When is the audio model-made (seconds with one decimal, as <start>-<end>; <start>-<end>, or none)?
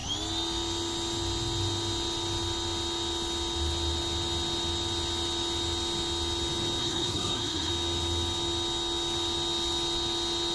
6.8-7.7